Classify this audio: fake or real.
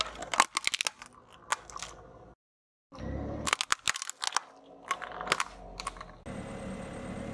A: real